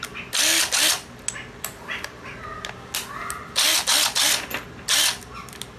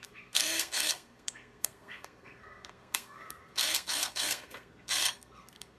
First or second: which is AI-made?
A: second